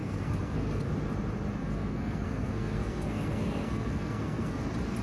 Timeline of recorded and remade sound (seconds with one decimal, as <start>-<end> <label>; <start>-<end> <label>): 0.0-0.9 remade; 0.9-1.6 recorded; 1.6-4.6 remade; 4.6-5.0 recorded